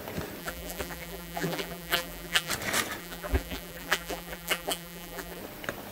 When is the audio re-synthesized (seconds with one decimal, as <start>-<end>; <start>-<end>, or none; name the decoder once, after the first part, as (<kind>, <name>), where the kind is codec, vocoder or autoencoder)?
0.4-2.5 (vocoder, BigVGAN v2); 3.0-5.4